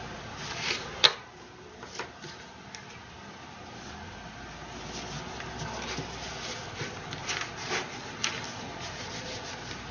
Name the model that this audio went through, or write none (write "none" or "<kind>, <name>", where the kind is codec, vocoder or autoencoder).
none